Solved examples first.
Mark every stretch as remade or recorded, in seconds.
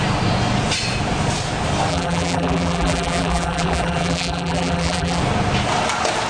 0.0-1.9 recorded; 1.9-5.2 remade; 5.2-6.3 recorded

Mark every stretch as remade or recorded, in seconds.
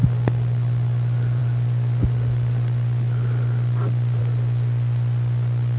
0.0-1.4 recorded; 1.4-4.2 remade; 4.2-5.8 recorded